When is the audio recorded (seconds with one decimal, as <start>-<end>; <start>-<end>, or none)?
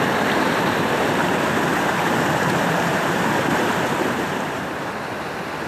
0.0-1.7; 5.1-5.7